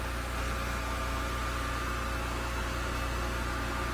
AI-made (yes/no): no